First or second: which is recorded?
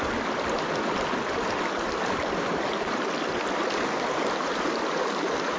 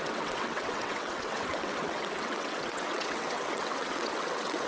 first